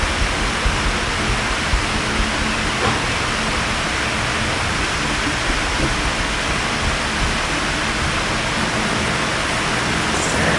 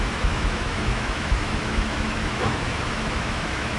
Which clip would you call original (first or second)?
first